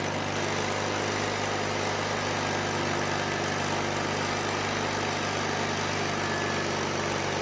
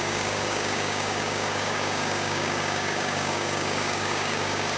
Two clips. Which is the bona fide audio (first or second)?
first